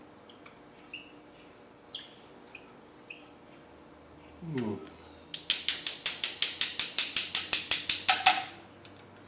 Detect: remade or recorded recorded